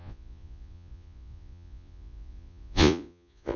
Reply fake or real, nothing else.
fake